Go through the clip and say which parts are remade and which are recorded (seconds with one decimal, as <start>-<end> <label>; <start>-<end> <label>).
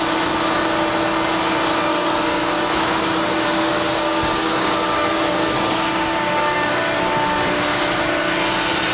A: 0.0-1.9 recorded; 1.9-7.1 remade; 7.1-7.7 recorded; 7.7-8.2 remade; 8.2-8.9 recorded